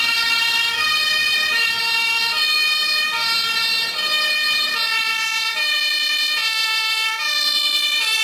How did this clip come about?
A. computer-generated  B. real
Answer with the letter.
B